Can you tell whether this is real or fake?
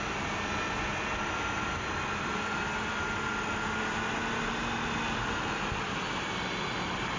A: real